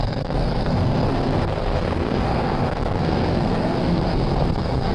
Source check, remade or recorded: remade